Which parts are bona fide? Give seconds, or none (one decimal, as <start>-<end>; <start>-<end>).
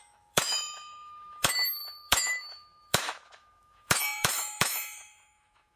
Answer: none